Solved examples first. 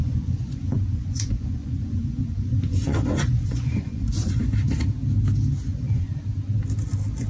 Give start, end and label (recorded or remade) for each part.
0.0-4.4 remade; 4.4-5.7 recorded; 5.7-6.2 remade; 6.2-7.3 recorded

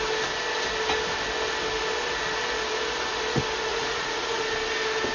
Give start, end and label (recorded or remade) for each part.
0.0-3.7 recorded; 3.7-4.4 remade; 4.4-5.1 recorded

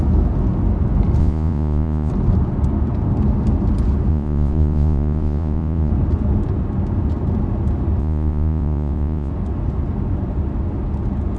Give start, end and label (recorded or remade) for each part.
0.0-1.2 recorded; 1.2-2.1 remade; 2.1-4.1 recorded; 4.1-5.9 remade; 5.9-8.0 recorded; 8.0-9.3 remade; 9.3-11.4 recorded